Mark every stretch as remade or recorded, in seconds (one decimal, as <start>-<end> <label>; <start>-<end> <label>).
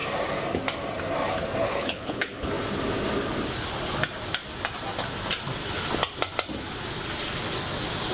0.0-1.6 recorded; 1.6-2.5 remade; 2.5-8.1 recorded